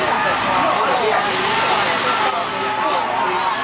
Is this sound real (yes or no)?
yes